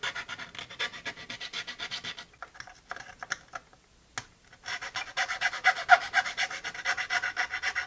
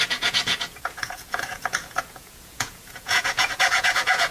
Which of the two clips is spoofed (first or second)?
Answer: second